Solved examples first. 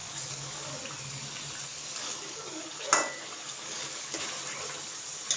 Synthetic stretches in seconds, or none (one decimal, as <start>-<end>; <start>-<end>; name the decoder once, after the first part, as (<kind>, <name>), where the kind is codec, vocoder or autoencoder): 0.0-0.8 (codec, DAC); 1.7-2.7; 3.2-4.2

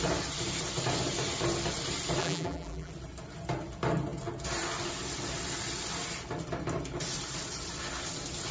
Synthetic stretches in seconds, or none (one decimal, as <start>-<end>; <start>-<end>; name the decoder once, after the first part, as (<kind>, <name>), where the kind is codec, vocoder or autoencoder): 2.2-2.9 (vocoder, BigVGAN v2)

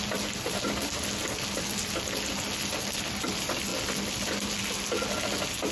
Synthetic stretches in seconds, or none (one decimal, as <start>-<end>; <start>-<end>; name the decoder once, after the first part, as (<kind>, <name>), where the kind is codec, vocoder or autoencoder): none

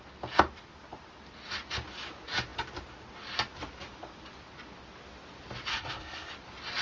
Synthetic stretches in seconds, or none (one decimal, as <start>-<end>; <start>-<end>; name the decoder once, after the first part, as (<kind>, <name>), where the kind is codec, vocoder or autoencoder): 5.7-6.3 (codec, SNAC)